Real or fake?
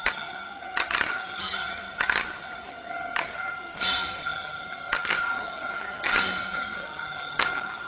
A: fake